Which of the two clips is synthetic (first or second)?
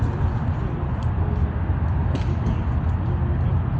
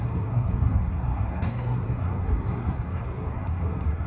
second